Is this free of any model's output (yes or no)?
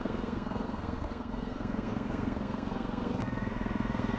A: no